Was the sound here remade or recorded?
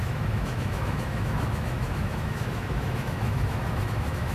remade